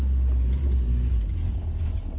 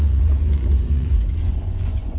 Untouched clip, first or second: first